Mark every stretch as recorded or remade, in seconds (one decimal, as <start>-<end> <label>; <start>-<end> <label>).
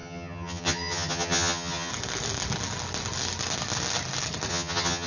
0.0-1.9 remade; 1.9-4.5 recorded; 4.5-5.1 remade